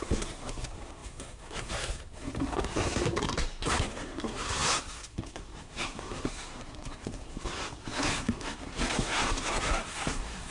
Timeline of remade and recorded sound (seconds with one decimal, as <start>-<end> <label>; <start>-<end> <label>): 0.0-10.5 remade